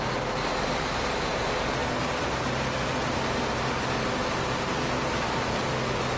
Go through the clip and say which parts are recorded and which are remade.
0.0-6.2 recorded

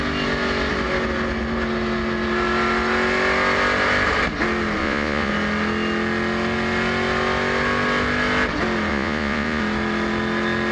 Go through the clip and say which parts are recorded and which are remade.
0.0-4.8 recorded; 4.8-5.3 remade; 5.3-8.9 recorded; 8.9-9.6 remade; 9.6-10.7 recorded

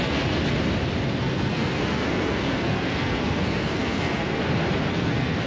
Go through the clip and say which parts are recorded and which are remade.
0.0-0.4 remade; 0.4-1.2 recorded; 1.2-4.4 remade; 4.4-4.9 recorded; 4.9-5.5 remade

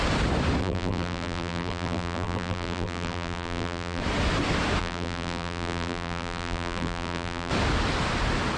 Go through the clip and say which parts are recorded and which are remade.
0.0-0.6 recorded; 0.6-4.0 remade; 4.0-4.8 recorded; 4.8-7.5 remade; 7.5-8.6 recorded